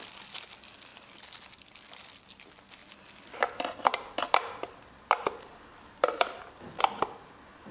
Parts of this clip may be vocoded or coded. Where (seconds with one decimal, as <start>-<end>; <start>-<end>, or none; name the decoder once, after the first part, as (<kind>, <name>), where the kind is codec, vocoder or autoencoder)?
none